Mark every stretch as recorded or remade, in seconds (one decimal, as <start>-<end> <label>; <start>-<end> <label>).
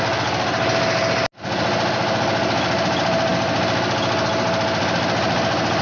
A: 0.0-5.8 recorded